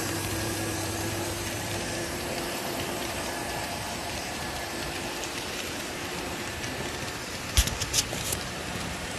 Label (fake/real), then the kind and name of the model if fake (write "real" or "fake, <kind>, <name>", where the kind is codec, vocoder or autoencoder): fake, vocoder, BigVGAN v2